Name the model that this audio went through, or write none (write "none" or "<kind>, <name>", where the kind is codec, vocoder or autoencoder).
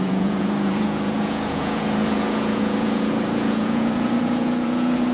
vocoder, Vocos